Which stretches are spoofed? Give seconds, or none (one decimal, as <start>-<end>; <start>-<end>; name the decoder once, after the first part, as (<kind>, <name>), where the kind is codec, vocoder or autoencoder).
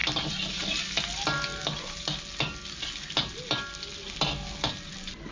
none